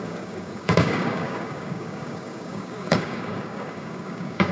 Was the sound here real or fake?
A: fake